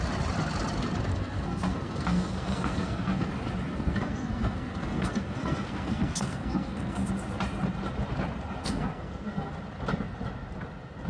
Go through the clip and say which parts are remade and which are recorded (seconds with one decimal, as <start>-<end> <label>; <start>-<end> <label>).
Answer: 0.0-1.1 recorded; 1.1-3.3 remade; 3.3-3.7 recorded; 3.7-7.1 remade; 7.1-8.6 recorded; 8.6-9.5 remade; 9.5-11.1 recorded